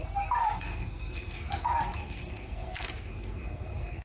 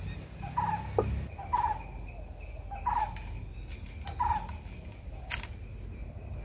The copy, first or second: first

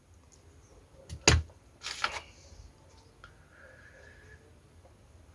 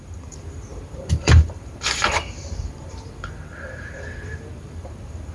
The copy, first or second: second